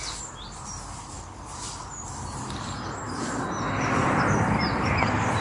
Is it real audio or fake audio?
fake